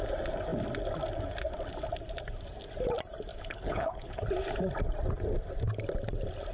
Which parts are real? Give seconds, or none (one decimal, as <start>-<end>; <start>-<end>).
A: 0.0-3.3; 4.2-6.5